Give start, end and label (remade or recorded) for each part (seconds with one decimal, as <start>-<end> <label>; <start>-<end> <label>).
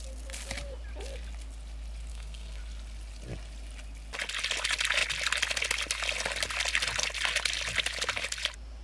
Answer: 0.0-2.1 recorded; 2.1-2.6 remade; 2.6-8.8 recorded